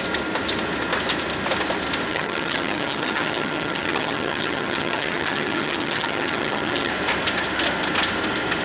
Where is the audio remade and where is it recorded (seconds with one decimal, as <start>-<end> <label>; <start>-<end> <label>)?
0.0-2.1 recorded; 2.1-6.9 remade; 6.9-8.6 recorded